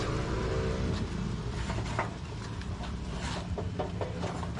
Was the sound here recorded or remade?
recorded